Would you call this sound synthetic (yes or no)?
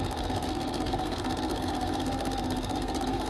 yes